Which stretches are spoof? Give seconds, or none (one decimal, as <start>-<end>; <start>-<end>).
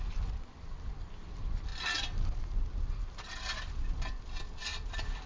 none